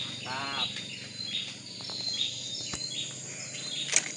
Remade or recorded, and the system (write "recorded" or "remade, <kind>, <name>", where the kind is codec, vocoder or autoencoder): recorded